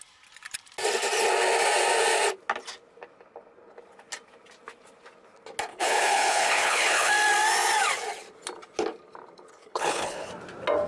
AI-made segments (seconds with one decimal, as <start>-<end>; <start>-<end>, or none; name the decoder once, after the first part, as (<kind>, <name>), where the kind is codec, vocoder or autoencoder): 5.7-7.1 (codec, HILCodec); 9.5-10.3